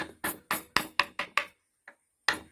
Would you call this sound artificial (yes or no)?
no